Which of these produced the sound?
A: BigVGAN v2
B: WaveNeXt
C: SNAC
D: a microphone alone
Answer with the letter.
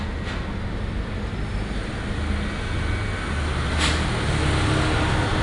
D